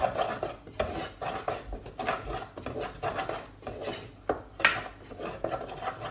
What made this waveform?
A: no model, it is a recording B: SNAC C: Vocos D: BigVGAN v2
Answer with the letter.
A